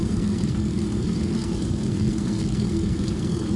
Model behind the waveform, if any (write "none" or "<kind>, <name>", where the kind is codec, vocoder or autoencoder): codec, SNAC